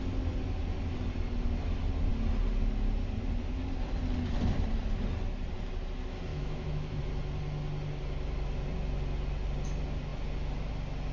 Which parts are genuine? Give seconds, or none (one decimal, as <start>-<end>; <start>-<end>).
0.0-6.3; 7.0-11.1